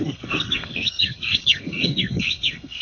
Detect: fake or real fake